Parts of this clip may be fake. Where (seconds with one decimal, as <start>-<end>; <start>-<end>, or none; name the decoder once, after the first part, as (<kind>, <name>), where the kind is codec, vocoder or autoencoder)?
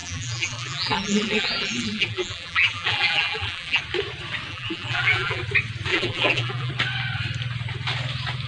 0.0-3.8 (vocoder, BigVGAN v2); 4.5-5.4; 5.9-6.7